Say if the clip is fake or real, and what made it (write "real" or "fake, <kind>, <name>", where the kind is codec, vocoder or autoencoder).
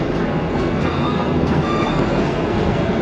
fake, codec, SNAC